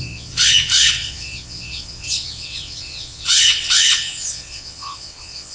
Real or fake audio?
fake